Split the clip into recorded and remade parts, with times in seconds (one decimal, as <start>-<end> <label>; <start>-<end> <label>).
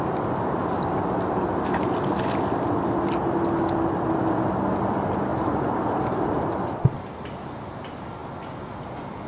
0.0-5.3 recorded; 5.3-6.4 remade; 6.4-9.3 recorded